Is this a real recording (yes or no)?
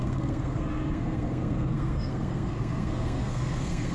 no